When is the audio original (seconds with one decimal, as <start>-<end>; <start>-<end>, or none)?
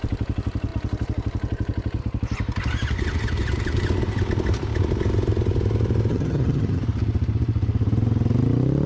0.0-6.1; 6.8-8.9